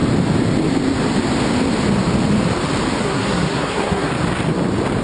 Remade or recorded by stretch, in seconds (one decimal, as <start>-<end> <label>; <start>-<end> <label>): 0.0-3.0 recorded; 3.0-4.1 remade; 4.1-5.0 recorded